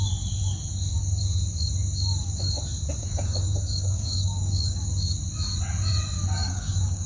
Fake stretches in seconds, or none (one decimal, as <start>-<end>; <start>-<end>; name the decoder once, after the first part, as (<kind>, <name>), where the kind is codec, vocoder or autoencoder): 3.0-4.9 (codec, DAC); 6.4-7.1